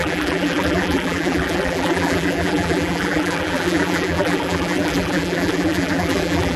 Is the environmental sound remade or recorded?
remade